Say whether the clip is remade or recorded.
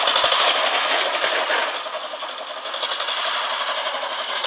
recorded